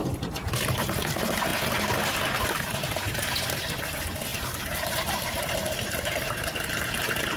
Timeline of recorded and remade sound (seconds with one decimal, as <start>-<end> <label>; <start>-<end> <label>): 0.0-4.3 recorded; 4.3-6.9 remade; 6.9-7.4 recorded